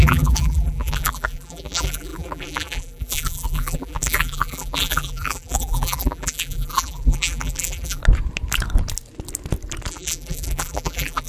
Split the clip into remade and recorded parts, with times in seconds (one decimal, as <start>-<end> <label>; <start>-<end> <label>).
0.0-8.0 remade; 8.0-9.9 recorded; 9.9-11.3 remade